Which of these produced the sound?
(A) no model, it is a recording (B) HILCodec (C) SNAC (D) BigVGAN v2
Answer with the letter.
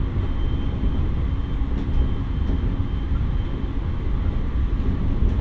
A